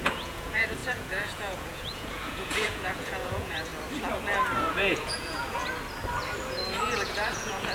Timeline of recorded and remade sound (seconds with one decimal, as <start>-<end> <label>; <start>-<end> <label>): 0.0-3.7 remade; 3.7-4.7 recorded; 4.7-5.6 remade; 5.6-6.8 recorded; 6.8-7.7 remade